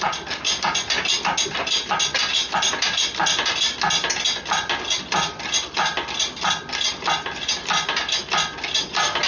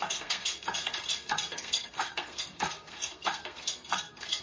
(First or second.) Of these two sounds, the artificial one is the second